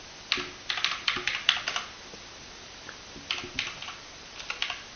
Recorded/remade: recorded